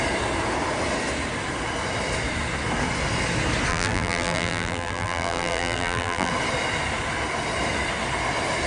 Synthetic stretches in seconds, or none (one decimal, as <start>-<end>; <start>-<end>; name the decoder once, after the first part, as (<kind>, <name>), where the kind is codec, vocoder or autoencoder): 3.7-6.3 (vocoder, BigVGAN v2)

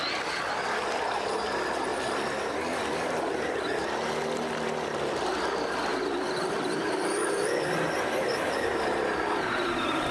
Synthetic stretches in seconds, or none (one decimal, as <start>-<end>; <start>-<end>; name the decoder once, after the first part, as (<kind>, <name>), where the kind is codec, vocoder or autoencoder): 5.9-6.7 (vocoder, BigVGAN v2)

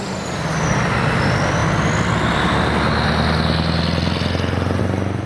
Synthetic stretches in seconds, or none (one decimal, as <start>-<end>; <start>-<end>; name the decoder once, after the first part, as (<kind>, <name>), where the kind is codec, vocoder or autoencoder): none

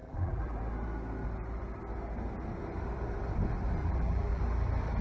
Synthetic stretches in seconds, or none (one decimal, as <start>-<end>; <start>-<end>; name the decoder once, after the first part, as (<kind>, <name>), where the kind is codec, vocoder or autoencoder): 0.0-0.6 (vocoder, BigVGAN v2); 3.8-4.4

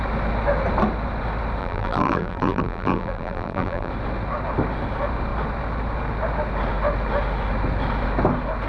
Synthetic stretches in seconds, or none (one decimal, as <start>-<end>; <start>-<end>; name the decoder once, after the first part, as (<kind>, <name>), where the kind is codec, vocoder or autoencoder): 1.6-3.9 (vocoder, BigVGAN v2)